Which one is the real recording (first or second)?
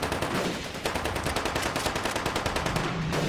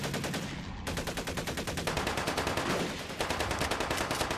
second